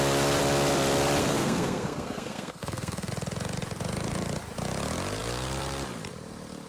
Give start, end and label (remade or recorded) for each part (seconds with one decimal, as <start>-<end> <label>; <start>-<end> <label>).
0.0-1.2 recorded; 1.2-3.1 remade; 3.1-6.7 recorded